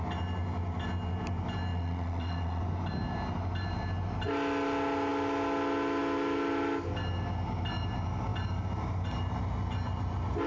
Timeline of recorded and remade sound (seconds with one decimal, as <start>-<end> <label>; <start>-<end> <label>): 0.0-1.7 recorded; 1.7-2.6 remade; 2.6-10.5 recorded